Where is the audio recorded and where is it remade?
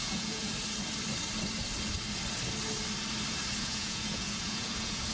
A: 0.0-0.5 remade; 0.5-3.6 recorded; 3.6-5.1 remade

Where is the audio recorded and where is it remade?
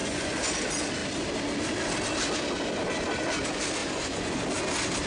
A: 0.0-0.5 remade; 0.5-3.8 recorded; 3.8-4.4 remade; 4.4-5.1 recorded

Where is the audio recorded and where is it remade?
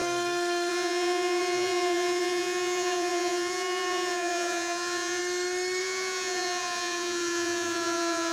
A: 0.0-0.7 recorded; 0.7-5.2 remade; 5.2-5.8 recorded; 5.8-8.3 remade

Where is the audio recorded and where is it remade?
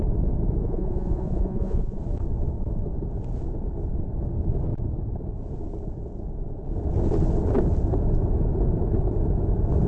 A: 0.0-0.6 recorded; 0.6-2.0 remade; 2.0-9.9 recorded